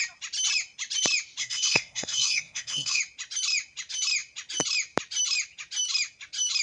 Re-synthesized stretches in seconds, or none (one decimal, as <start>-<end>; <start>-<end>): 1.4-3.0